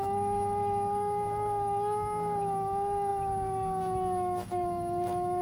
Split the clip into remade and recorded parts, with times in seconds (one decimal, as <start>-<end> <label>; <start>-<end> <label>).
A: 0.0-5.4 remade